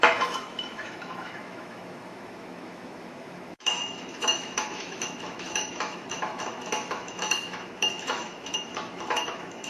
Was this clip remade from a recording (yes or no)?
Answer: yes